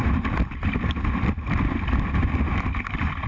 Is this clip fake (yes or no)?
yes